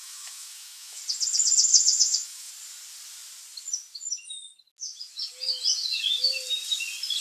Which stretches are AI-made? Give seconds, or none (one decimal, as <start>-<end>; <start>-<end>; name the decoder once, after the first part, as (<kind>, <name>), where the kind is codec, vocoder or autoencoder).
0.0-1.0 (autoencoder, DAC-VAE); 1.7-2.5